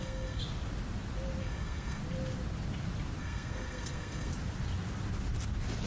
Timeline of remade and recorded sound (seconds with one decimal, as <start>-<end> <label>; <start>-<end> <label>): 0.0-0.4 remade; 0.4-1.4 recorded; 1.4-2.0 remade; 2.0-3.2 recorded; 3.2-4.3 remade; 4.3-5.9 recorded